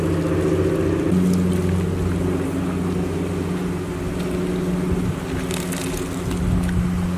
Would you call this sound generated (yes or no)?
no